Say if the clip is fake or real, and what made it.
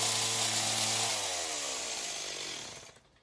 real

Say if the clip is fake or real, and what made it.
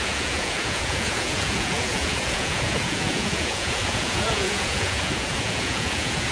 fake, vocoder, Vocos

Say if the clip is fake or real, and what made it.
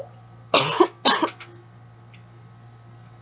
real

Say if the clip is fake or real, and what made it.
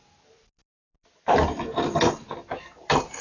real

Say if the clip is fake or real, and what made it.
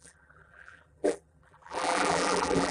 fake, vocoder, BigVGAN v2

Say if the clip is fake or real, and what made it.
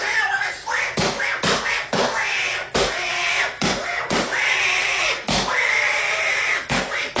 real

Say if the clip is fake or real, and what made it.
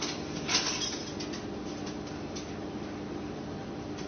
real